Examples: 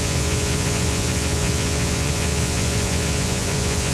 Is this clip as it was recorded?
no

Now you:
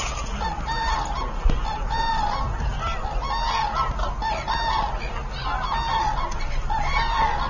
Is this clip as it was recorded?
yes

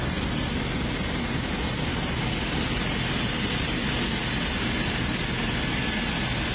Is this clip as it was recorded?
yes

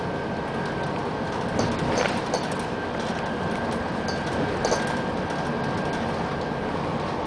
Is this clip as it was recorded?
yes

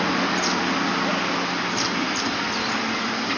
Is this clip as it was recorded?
yes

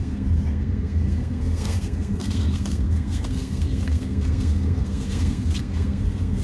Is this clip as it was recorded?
no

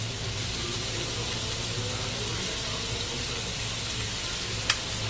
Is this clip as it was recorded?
yes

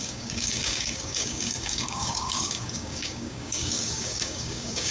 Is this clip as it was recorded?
no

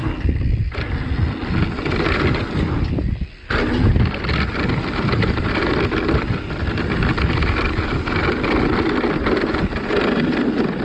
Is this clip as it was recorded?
yes